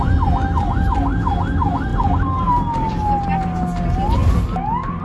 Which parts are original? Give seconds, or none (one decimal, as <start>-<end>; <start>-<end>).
0.0-1.9; 2.9-5.0